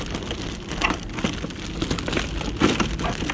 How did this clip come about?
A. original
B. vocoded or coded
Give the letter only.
A